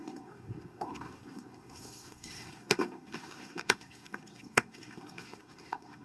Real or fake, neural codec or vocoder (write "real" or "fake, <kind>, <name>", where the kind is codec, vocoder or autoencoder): fake, codec, SNAC